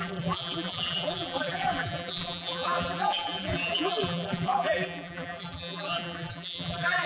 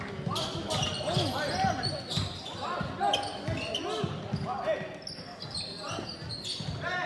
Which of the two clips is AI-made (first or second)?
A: first